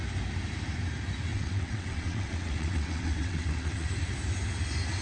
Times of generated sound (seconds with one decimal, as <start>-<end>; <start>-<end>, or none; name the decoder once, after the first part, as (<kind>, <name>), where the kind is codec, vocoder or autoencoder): 1.3-3.9 (vocoder, WaveNeXt)